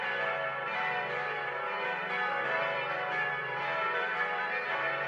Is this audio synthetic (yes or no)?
yes